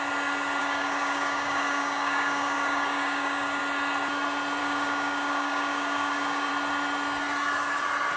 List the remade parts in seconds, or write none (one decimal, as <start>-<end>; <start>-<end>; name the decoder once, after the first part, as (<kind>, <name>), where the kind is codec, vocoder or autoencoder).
0.6-3.6 (codec, DAC); 4.6-6.5